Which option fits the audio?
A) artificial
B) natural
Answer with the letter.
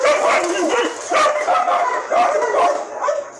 B